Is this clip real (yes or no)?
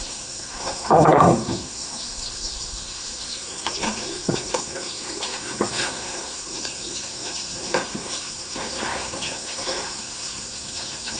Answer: no